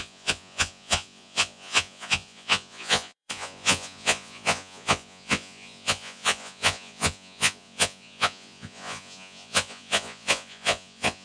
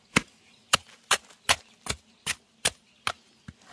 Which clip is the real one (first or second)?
second